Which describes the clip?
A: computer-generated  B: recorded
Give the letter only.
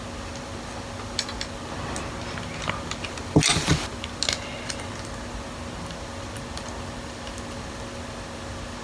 B